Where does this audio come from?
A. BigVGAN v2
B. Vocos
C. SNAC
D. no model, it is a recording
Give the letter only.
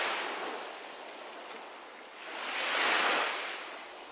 D